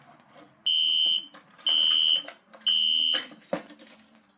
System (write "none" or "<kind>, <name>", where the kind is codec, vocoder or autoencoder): none